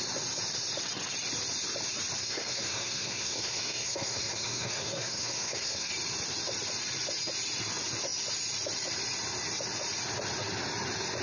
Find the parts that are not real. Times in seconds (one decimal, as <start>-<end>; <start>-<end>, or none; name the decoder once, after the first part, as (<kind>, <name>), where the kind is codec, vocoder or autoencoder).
2.2-5.9 (codec, SNAC)